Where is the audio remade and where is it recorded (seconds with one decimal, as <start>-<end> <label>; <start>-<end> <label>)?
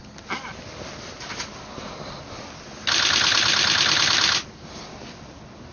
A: 0.0-5.7 recorded